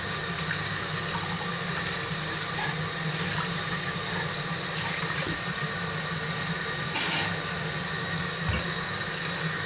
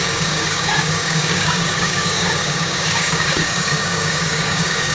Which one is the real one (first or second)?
first